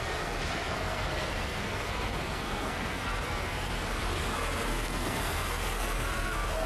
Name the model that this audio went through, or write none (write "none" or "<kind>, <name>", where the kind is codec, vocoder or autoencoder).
codec, SNAC